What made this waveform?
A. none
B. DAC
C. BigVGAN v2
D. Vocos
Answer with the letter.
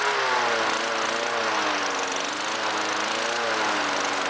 A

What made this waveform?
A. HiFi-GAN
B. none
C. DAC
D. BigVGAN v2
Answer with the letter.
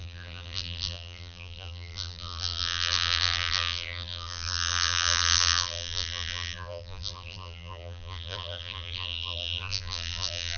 D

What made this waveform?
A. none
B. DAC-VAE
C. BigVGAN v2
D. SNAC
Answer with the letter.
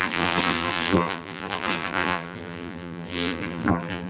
C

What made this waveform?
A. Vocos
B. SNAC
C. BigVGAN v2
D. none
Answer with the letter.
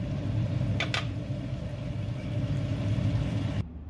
D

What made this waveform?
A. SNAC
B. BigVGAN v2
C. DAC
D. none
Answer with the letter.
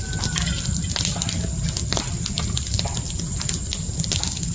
D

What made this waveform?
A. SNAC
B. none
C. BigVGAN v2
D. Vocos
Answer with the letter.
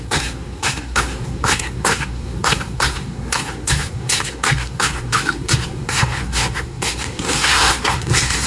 A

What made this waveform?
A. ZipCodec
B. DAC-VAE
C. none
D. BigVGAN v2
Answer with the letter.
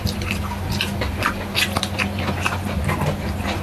C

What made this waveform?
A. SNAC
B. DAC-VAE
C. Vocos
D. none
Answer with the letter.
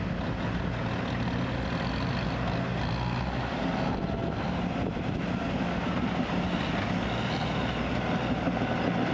D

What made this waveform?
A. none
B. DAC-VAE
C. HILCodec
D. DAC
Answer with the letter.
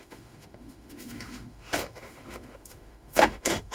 B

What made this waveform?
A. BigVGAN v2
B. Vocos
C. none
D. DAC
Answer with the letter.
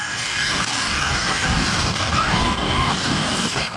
D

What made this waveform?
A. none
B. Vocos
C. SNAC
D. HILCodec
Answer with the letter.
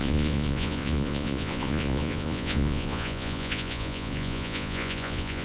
B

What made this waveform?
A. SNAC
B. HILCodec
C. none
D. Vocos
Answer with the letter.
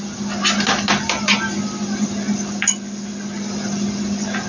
C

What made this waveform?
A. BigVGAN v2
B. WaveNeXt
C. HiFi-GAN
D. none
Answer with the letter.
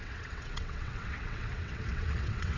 B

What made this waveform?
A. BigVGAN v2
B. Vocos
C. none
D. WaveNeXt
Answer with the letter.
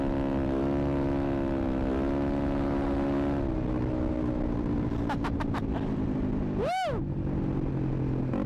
C